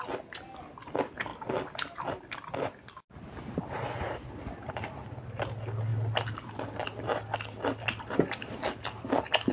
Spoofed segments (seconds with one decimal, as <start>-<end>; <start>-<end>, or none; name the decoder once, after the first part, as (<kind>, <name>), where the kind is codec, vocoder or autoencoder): none